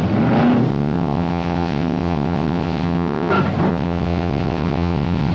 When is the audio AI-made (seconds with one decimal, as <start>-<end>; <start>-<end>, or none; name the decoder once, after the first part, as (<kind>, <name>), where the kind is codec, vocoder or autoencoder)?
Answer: 0.7-3.3 (vocoder, WaveNeXt); 3.7-5.3